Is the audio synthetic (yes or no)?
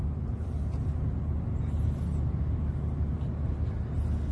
no